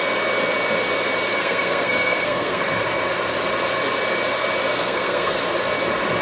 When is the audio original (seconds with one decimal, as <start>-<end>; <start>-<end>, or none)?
0.0-1.4; 2.7-4.7; 5.4-6.2